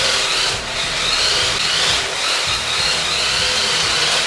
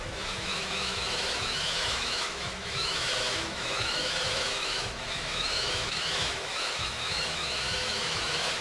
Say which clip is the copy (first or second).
second